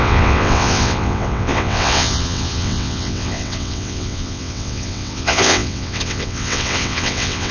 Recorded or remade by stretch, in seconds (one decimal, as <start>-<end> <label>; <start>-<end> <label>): 0.0-7.5 remade